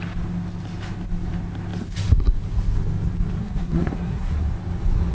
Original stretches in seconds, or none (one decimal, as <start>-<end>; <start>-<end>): 0.0-3.4; 4.4-5.1